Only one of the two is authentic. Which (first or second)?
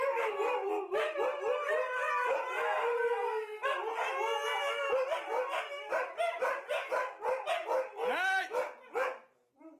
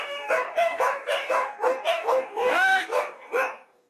first